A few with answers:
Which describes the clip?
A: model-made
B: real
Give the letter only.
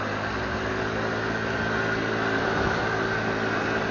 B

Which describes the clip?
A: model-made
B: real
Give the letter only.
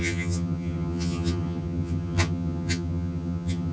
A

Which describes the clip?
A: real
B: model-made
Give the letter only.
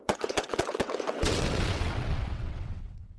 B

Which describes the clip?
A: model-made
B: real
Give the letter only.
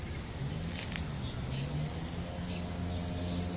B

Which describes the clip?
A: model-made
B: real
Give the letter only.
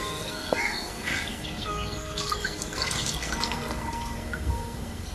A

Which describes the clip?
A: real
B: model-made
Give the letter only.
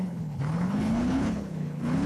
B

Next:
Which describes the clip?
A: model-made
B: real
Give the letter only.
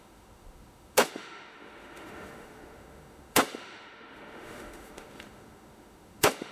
A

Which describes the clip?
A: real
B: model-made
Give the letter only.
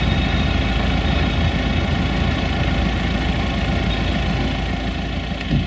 A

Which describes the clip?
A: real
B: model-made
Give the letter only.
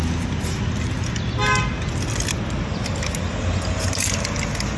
A